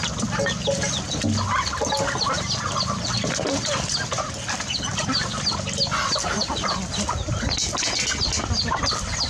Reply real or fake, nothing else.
real